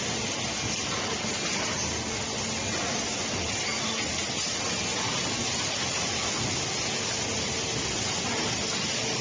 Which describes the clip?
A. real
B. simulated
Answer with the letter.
A